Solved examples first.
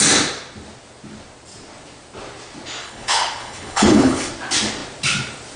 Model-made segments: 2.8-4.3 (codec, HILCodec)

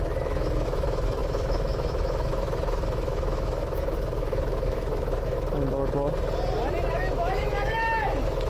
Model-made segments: 0.0-5.8 (autoencoder, DAC-VAE); 6.9-8.5

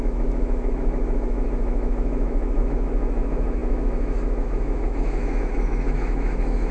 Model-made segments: 0.0-6.7 (autoencoder, DAC-VAE)

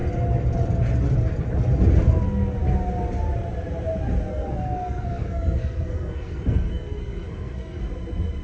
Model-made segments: 4.3-7.8 (codec, SNAC)

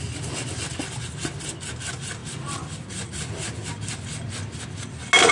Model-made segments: none

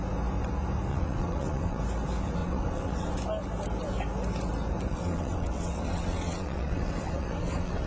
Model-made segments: 0.9-1.8 (vocoder, WaveNeXt); 2.4-3.1; 4.9-7.9